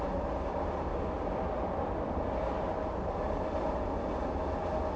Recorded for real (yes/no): yes